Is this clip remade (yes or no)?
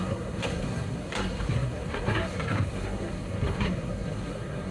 yes